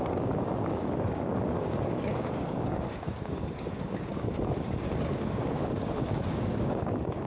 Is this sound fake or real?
fake